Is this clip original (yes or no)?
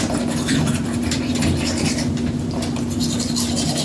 yes